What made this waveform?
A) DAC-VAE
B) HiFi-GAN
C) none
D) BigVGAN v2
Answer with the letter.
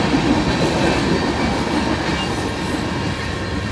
C